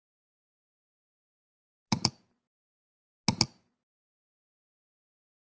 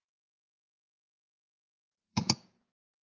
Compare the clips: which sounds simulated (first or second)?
second